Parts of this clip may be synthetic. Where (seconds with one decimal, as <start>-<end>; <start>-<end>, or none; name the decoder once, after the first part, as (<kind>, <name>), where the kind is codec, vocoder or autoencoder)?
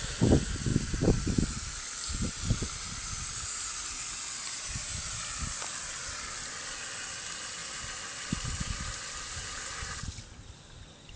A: none